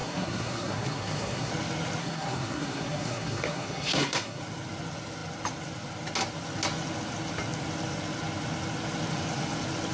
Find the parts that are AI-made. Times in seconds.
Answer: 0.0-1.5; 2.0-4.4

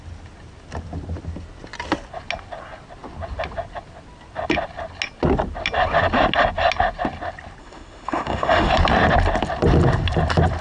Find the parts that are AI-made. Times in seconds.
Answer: 7.6-8.7

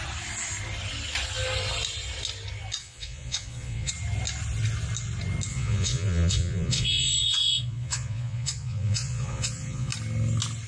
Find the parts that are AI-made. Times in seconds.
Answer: 2.8-3.9; 5.5-9.9

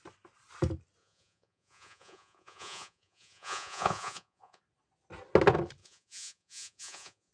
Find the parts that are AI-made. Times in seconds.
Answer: 1.0-4.6; 5.8-7.3

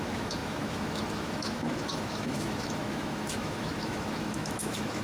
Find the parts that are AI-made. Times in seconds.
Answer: 0.0-5.0